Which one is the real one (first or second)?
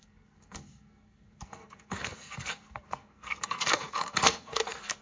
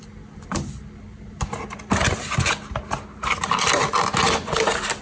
second